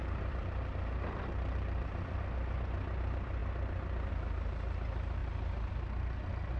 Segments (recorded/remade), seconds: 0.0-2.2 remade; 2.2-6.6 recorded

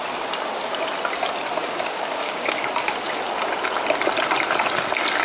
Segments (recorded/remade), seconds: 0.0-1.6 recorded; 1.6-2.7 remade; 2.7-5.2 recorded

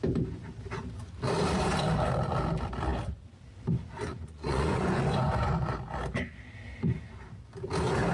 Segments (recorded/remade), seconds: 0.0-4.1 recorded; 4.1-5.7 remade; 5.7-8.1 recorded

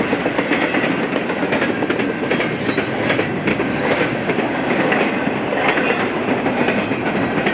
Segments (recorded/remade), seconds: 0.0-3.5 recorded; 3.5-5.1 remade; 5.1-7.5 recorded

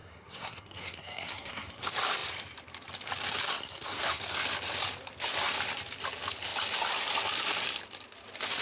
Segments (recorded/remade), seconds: 0.0-1.8 remade; 1.8-3.5 recorded; 3.5-4.2 remade; 4.2-8.6 recorded

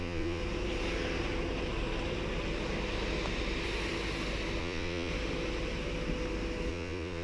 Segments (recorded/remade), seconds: 0.0-0.4 remade; 0.4-4.6 recorded; 4.6-5.1 remade; 5.1-6.7 recorded; 6.7-7.2 remade

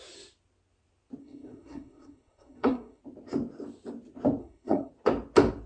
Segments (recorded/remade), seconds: 0.0-1.2 recorded; 1.2-3.0 remade; 3.0-4.4 recorded; 4.4-4.9 remade; 4.9-5.7 recorded